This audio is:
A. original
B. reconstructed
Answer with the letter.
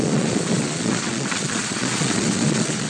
B